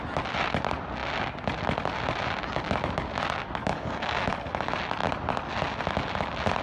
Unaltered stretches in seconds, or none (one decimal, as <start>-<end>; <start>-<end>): 0.0-3.6; 4.6-6.6